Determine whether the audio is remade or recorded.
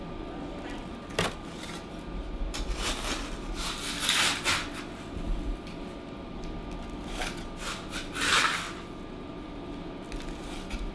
recorded